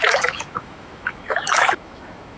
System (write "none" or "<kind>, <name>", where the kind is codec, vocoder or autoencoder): autoencoder, DAC-VAE